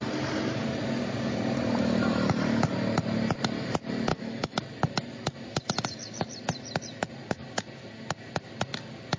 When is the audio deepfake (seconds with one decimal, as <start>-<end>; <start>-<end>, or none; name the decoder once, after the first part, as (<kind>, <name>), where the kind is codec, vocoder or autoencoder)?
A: 4.1-4.6 (autoencoder, DAC-VAE)